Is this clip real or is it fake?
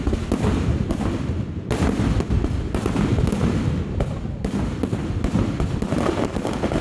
real